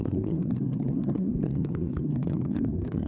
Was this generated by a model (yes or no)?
yes